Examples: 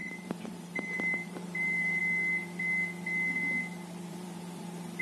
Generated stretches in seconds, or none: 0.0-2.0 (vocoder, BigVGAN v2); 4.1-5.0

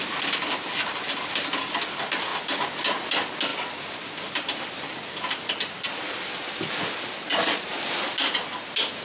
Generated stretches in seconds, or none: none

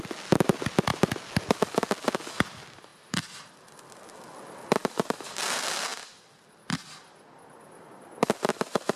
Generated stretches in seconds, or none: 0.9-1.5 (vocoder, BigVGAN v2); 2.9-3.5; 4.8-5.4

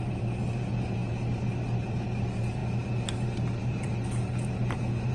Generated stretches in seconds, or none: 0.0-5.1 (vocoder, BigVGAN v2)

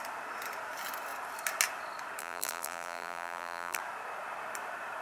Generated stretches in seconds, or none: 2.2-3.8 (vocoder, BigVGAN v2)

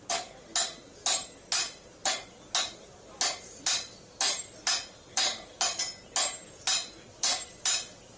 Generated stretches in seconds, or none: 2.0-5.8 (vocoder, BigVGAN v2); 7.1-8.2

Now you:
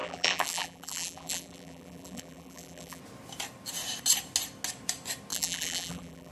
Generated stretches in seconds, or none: 0.0-3.0 (vocoder, BigVGAN v2); 5.3-6.3